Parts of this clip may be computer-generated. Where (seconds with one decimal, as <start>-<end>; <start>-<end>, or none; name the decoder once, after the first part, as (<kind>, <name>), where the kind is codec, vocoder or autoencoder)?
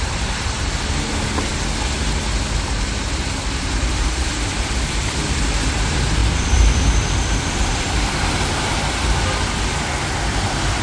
6.2-8.2 (vocoder, BigVGAN v2)